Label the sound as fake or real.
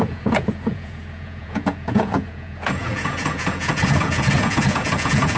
fake